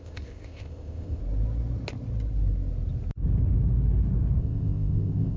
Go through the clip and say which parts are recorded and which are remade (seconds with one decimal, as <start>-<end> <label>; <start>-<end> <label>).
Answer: 0.0-1.2 remade; 1.2-4.4 recorded; 4.4-5.4 remade

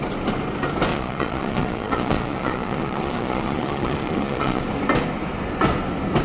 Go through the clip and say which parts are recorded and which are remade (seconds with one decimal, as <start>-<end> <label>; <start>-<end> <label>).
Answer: 0.0-0.9 recorded; 0.9-4.6 remade; 4.6-6.2 recorded

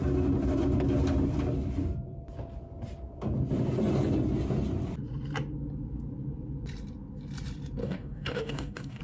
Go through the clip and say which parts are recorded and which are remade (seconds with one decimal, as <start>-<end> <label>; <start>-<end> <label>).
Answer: 0.0-7.8 recorded; 7.8-9.0 remade

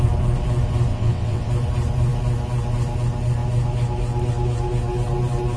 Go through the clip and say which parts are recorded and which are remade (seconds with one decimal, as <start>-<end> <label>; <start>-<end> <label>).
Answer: 0.0-0.9 recorded; 0.9-1.5 remade; 1.5-5.6 recorded

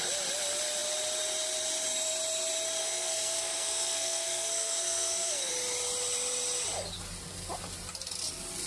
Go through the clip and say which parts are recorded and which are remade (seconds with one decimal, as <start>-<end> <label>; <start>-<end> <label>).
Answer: 0.0-2.8 recorded; 2.8-5.5 remade; 5.5-8.7 recorded

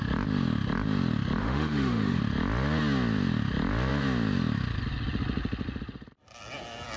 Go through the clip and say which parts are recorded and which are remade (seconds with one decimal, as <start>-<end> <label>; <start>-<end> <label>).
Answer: 0.0-1.4 recorded; 1.4-2.2 remade; 2.2-7.0 recorded

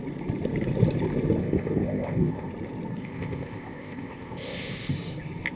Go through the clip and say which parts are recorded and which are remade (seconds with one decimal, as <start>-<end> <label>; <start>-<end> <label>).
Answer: 0.0-1.4 recorded; 1.4-2.5 remade; 2.5-3.0 recorded; 3.0-4.9 remade; 4.9-5.6 recorded

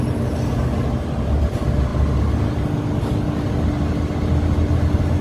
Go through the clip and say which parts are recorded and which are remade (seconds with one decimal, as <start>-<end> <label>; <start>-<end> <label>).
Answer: 0.0-5.2 recorded